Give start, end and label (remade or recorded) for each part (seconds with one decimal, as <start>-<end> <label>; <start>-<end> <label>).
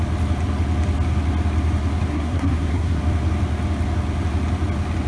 0.0-2.1 recorded; 2.1-3.0 remade; 3.0-5.1 recorded